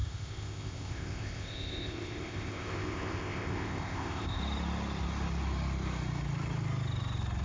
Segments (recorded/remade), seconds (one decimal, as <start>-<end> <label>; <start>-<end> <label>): 0.0-4.4 remade; 4.4-7.4 recorded